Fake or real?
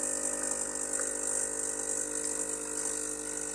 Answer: real